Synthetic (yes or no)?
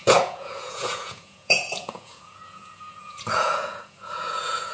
yes